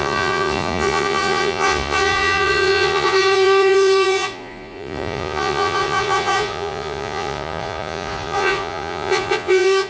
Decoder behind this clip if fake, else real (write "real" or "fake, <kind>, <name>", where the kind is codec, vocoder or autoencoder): fake, vocoder, Vocos